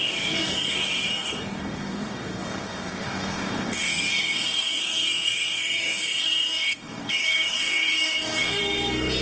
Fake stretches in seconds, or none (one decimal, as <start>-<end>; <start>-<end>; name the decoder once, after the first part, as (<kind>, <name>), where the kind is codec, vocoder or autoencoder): 0.0-8.6 (codec, DAC)